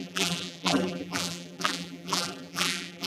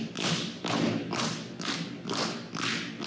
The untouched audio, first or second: second